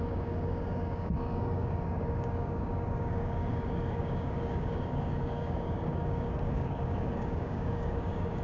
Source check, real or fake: fake